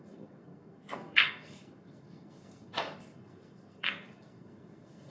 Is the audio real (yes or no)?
no